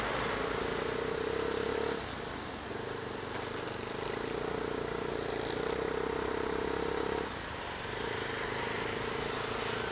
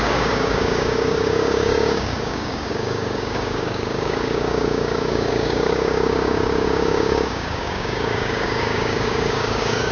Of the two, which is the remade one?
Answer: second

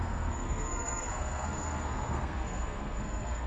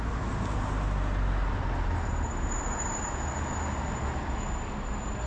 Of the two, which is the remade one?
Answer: first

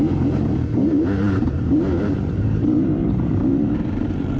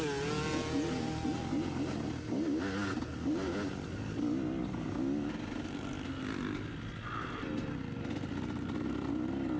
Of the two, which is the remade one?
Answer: first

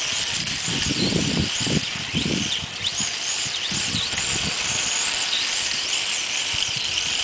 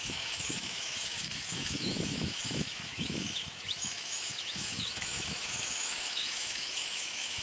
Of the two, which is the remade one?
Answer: second